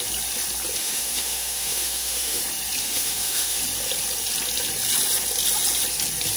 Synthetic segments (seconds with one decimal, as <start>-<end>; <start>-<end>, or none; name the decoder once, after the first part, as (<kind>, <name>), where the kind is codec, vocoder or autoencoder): 0.8-2.4 (autoencoder, DAC-VAE); 2.8-3.6